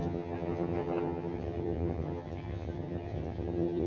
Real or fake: fake